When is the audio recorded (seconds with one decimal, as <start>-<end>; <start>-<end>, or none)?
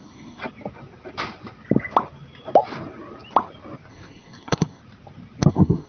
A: 0.4-3.9; 4.8-5.5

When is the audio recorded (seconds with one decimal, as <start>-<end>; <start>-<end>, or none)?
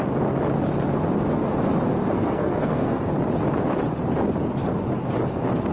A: 0.0-2.0; 3.1-5.7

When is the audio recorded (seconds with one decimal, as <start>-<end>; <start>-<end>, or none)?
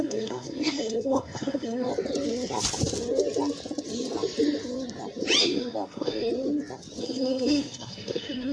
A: 1.9-5.4; 6.3-7.0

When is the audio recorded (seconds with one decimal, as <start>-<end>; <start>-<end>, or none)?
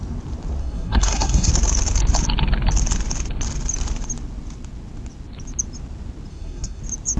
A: 0.0-0.6; 1.5-6.3; 6.8-7.2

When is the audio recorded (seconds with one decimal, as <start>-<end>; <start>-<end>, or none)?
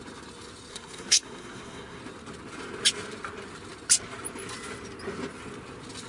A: 0.0-0.7; 2.0-6.1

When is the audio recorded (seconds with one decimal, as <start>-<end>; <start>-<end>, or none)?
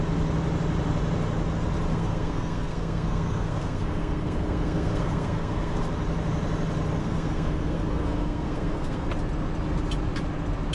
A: 0.0-1.9; 5.8-7.0; 9.1-10.7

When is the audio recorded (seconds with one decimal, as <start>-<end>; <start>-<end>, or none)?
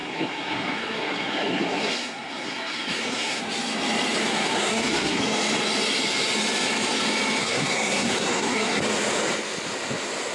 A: 3.4-4.2; 5.2-7.4; 8.8-10.3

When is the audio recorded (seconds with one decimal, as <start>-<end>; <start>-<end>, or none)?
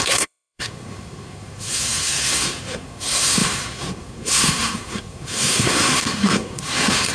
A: none